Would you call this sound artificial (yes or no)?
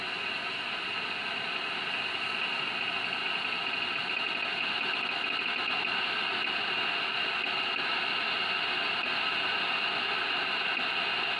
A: no